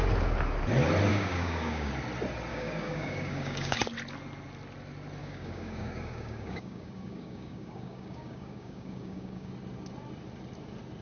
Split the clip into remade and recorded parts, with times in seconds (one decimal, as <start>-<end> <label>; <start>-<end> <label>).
0.0-1.1 recorded; 1.1-1.9 remade; 1.9-2.5 recorded; 2.5-3.8 remade; 3.8-5.2 recorded; 5.2-9.5 remade; 9.5-11.0 recorded